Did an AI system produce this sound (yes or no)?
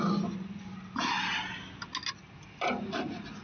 no